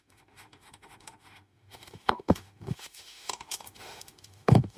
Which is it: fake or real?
fake